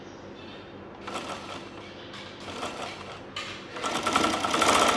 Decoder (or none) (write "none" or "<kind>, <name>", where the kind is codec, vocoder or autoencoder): none